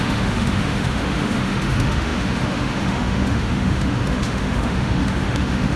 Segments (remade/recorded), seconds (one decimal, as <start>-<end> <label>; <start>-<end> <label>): 0.0-5.8 remade